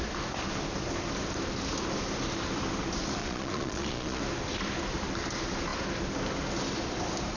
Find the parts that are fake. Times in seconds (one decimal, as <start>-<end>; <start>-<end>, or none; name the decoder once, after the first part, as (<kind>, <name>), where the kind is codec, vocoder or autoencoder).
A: 3.2-4.2 (vocoder, Vocos)

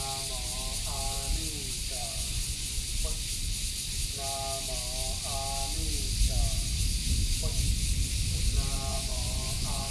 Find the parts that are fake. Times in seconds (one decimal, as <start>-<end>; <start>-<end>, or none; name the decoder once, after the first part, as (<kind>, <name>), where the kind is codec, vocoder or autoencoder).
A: 2.0-2.9 (vocoder, Vocos); 8.9-9.9

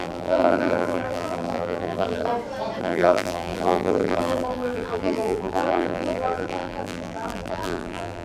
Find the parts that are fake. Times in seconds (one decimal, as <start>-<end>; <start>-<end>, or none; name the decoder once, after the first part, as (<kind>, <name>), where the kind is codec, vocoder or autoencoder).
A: 0.0-2.3 (vocoder, BigVGAN v2); 2.8-8.2

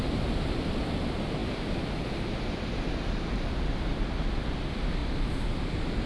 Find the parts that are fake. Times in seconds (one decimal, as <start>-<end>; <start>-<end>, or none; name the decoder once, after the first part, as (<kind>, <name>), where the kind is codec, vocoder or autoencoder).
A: none

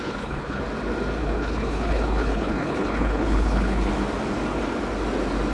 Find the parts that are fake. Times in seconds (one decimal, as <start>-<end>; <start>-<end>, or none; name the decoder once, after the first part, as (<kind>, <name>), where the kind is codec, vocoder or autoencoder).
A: 0.0-0.6 (codec, HILCodec); 1.2-3.9

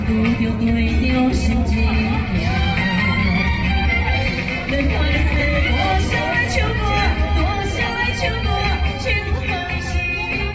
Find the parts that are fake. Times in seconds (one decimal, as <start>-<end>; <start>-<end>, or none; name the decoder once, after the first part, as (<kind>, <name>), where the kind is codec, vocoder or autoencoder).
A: 3.2-5.7 (vocoder, BigVGAN v2)